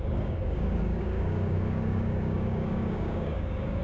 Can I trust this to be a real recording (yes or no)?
no